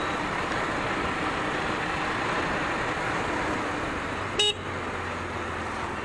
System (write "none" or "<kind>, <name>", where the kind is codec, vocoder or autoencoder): none